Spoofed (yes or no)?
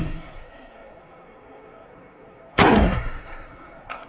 yes